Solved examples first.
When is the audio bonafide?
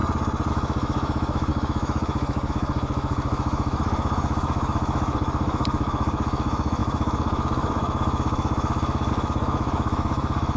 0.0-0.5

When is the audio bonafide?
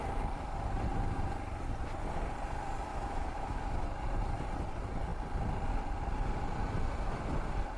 0.0-2.9; 3.9-7.8